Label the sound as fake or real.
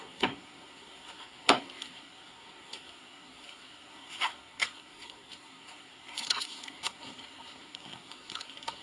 fake